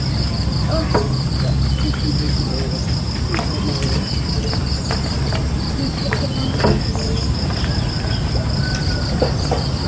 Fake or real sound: real